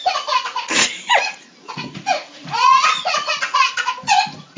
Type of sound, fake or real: fake